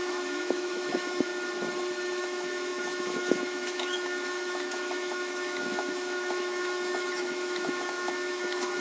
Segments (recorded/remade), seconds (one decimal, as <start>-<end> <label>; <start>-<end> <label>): 0.0-1.3 remade; 1.3-2.2 recorded; 2.2-8.8 remade